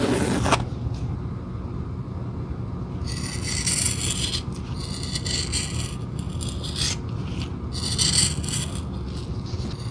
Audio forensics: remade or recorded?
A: recorded